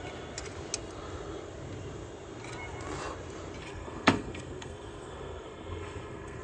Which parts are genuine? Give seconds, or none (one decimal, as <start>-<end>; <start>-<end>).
0.0-3.6